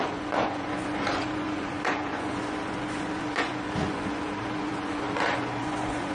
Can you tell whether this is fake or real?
fake